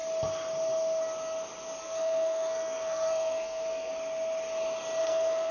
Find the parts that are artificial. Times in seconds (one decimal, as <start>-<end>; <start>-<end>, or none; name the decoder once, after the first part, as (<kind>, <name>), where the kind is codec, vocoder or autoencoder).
1.8-3.9 (codec, SNAC); 5.0-5.5